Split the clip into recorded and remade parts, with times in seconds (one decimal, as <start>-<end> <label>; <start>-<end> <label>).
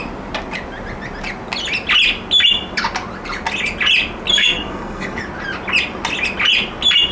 0.0-4.3 recorded; 4.3-5.2 remade; 5.2-7.1 recorded